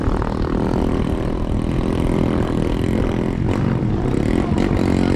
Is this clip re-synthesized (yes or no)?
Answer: yes